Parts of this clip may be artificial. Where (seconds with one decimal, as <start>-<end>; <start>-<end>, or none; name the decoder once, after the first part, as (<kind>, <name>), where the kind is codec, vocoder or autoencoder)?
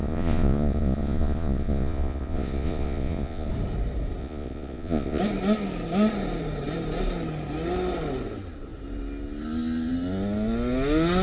0.0-3.5 (vocoder, Vocos); 4.2-5.2